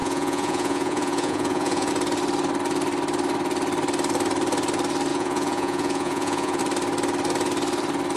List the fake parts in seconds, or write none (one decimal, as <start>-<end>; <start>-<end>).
0.0-1.9; 5.1-6.6

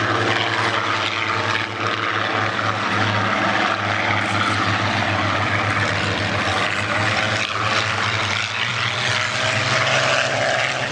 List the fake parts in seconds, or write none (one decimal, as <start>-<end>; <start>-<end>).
none

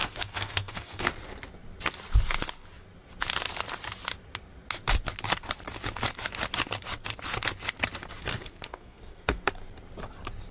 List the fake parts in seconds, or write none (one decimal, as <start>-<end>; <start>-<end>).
0.0-1.1; 8.4-9.5

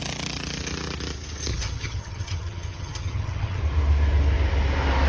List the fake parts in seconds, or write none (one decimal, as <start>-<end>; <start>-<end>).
1.5-3.6

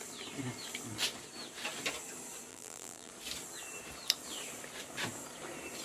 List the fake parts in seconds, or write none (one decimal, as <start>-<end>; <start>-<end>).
2.5-3.1

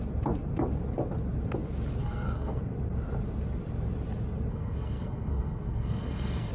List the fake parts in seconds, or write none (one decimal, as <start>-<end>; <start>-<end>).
2.0-2.6; 4.5-6.5

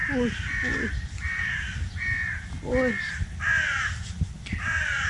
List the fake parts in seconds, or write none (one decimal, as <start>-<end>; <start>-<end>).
none

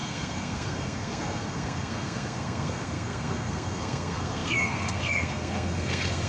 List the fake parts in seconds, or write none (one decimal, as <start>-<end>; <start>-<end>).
0.0-6.3